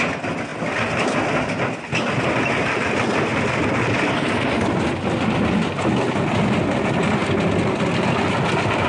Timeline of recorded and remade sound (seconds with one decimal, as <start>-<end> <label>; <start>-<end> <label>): 0.0-8.9 recorded